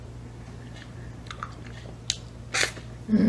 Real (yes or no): yes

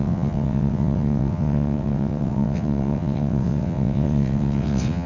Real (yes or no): no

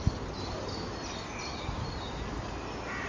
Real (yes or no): yes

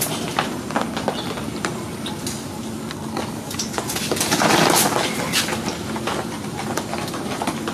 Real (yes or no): yes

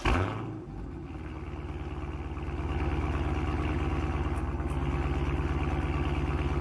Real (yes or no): yes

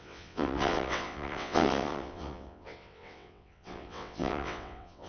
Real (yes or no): no